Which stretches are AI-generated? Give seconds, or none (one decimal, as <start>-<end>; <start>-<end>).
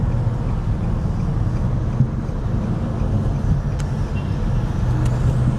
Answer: none